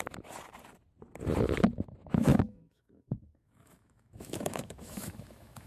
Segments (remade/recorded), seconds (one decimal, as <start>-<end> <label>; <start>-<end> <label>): 0.0-2.0 recorded; 2.0-5.7 remade